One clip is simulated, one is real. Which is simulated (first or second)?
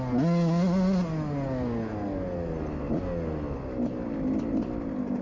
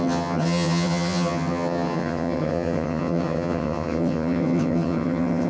second